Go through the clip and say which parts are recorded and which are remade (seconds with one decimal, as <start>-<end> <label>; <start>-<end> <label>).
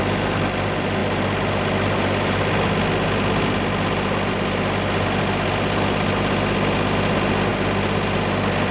0.0-8.7 recorded